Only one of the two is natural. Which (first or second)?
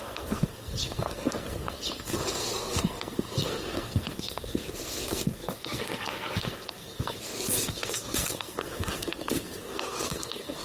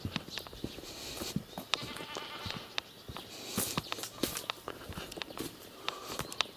second